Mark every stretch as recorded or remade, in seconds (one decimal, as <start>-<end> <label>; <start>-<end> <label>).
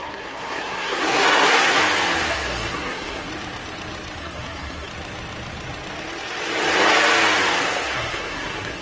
0.0-1.8 remade; 1.8-2.3 recorded; 2.3-3.3 remade; 3.3-4.2 recorded; 4.2-4.9 remade; 4.9-7.6 recorded; 7.6-8.8 remade